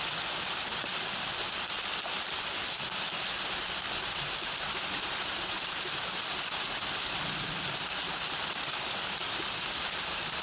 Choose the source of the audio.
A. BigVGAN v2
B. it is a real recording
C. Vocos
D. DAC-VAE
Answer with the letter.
B